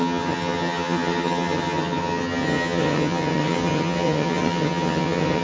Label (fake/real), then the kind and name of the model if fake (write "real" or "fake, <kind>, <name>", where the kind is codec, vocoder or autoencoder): fake, vocoder, HiFi-GAN